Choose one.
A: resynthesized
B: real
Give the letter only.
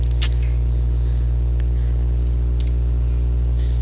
B